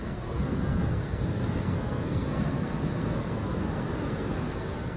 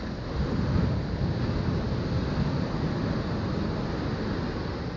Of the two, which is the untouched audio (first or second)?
second